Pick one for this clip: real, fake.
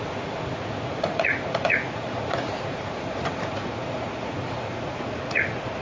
fake